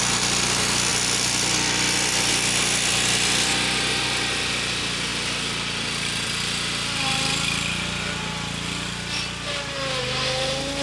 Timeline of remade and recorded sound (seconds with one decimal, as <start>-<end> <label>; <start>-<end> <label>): 0.0-10.8 recorded

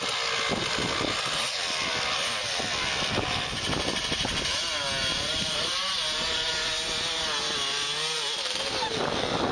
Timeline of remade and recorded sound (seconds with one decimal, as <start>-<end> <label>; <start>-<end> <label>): 0.0-5.1 recorded; 5.1-6.5 remade; 6.5-9.5 recorded